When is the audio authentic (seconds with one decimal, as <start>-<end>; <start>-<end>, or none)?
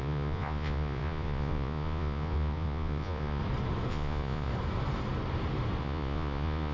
3.4-3.9; 4.5-5.8